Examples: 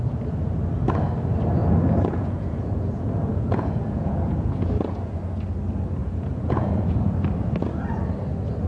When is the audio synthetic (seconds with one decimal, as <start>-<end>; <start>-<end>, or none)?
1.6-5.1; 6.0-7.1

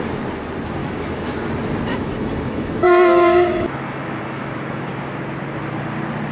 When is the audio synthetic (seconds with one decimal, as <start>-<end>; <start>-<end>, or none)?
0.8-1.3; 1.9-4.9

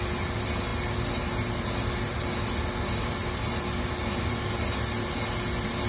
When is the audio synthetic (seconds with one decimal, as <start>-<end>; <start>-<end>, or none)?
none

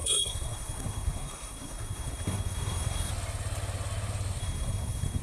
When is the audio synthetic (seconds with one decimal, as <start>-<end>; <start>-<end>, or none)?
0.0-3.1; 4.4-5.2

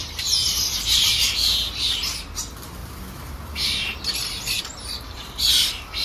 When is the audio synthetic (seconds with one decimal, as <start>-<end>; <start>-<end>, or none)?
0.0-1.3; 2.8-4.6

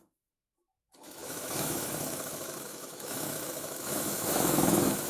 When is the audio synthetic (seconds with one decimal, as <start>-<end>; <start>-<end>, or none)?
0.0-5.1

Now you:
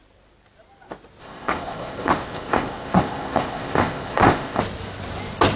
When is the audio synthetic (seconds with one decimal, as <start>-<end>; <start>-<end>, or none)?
1.2-4.6